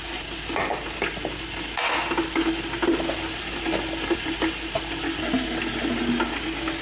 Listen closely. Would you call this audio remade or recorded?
recorded